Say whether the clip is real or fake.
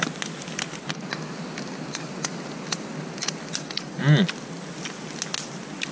real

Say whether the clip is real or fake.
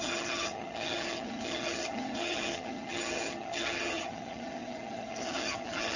fake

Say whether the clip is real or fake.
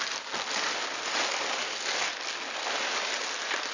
real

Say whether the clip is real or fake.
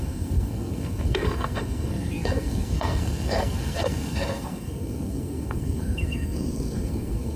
fake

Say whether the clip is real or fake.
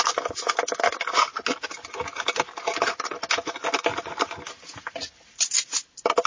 real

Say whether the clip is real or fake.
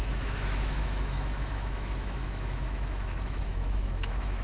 fake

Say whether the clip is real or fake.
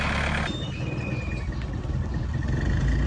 real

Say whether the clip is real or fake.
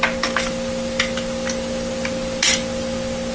real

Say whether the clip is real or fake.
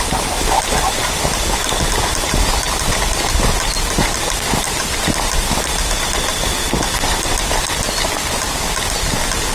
real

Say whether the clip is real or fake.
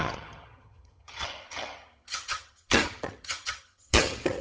fake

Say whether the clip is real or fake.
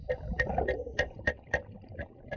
real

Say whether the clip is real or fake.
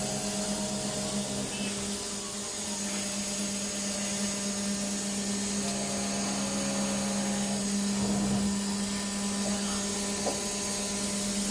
real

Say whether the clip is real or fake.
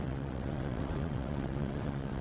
fake